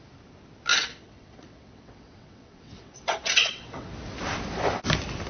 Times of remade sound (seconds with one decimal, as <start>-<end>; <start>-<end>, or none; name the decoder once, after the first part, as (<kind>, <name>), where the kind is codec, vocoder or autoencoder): 0.7-3.9 (vocoder, WaveNeXt)